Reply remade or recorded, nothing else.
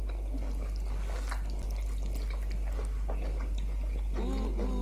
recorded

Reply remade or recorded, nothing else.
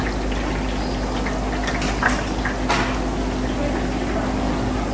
recorded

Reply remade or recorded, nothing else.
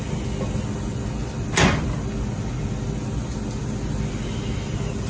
recorded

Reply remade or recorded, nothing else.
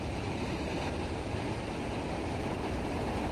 recorded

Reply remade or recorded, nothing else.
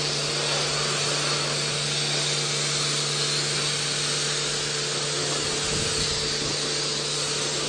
recorded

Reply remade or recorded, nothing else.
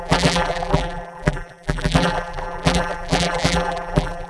remade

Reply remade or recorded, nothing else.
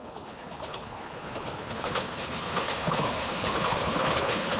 remade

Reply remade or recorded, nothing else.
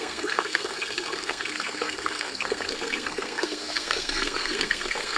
remade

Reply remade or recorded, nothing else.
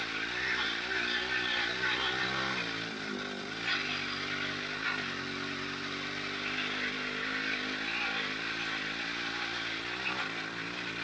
recorded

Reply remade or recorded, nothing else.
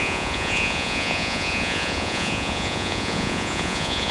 remade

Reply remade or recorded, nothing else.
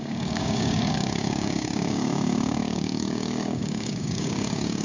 remade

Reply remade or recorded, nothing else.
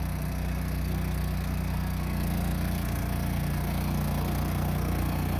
remade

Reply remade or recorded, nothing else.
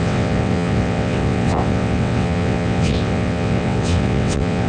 remade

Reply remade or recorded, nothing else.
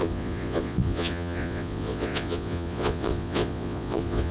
remade